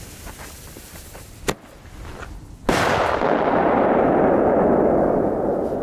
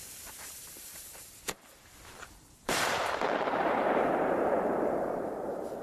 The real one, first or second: first